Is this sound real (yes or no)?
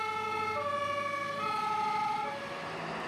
yes